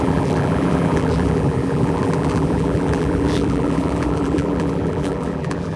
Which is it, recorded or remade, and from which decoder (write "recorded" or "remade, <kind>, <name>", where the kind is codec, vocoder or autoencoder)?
remade, vocoder, BigVGAN v2